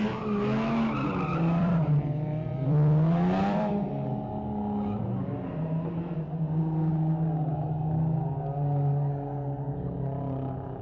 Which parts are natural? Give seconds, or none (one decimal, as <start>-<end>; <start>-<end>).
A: 0.0-1.3; 3.9-10.8